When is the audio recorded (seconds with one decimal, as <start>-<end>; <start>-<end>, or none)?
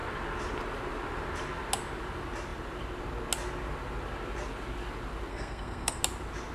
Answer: 0.0-5.3; 6.0-6.5